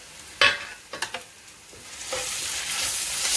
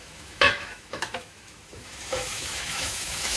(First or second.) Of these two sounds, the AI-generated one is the second